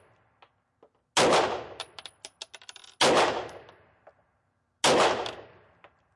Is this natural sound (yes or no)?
yes